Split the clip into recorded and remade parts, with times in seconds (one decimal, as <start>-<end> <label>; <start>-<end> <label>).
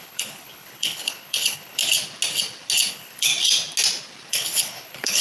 0.0-1.8 remade; 1.8-2.9 recorded; 2.9-3.3 remade; 3.3-4.3 recorded; 4.3-5.2 remade